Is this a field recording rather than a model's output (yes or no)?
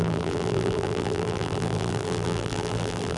no